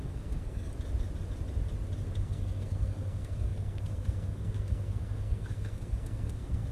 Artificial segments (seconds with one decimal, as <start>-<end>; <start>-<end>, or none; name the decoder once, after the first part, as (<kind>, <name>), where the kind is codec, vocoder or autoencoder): 0.0-0.7 (codec, SNAC); 2.2-6.7

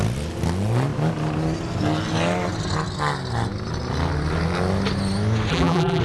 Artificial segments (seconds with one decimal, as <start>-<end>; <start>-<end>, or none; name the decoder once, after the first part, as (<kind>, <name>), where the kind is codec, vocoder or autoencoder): 5.5-6.0 (vocoder, BigVGAN v2)

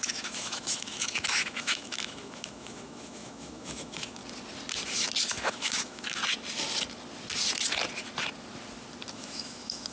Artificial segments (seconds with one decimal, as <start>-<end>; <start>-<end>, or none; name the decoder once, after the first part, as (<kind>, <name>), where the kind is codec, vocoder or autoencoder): 0.0-4.2 (autoencoder, DAC-VAE); 5.3-6.2; 9.1-9.9

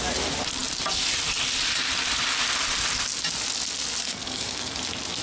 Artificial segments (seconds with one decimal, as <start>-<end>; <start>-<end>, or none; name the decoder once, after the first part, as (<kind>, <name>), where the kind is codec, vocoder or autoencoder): 4.0-4.8 (codec, SNAC)

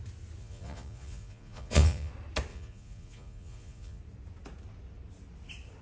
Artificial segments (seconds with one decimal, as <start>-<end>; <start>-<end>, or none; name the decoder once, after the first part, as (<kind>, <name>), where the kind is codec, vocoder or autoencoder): 0.4-2.1 (vocoder, Vocos); 2.5-4.0

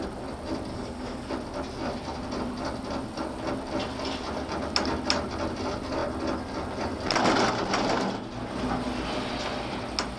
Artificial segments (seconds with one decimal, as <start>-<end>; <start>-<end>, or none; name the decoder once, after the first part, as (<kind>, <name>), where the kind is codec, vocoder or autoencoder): 0.7-1.3 (codec, DAC)

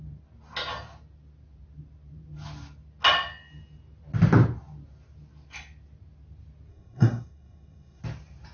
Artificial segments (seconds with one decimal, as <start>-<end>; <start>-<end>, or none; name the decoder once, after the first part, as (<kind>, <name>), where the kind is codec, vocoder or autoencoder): 6.7-8.0 (codec, SNAC)